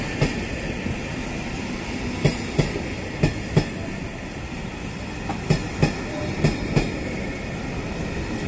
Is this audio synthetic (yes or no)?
no